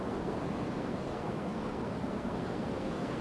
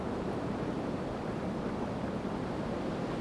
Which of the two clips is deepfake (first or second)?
first